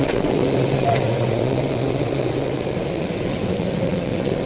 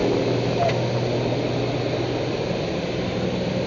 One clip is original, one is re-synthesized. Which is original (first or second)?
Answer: second